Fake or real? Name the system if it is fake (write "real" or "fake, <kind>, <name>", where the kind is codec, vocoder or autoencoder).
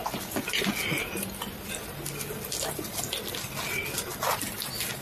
real